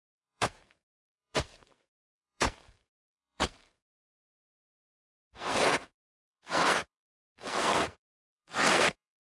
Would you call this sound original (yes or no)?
no